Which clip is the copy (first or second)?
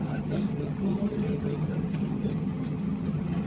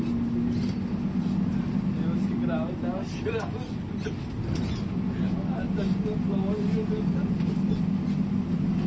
first